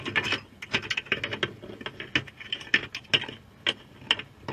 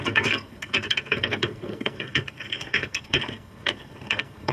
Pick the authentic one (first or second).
first